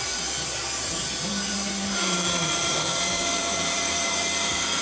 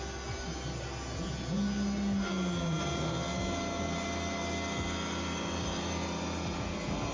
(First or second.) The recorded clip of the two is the second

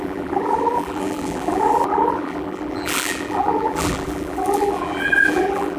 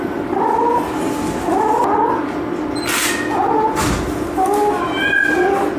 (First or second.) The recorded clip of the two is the second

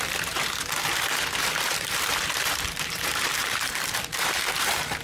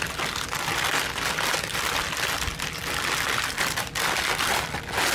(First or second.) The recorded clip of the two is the second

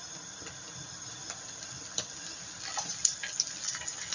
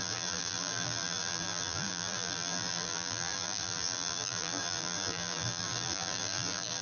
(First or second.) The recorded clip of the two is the first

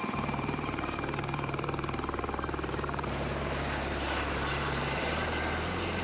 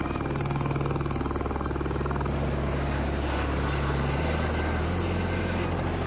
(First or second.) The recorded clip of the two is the second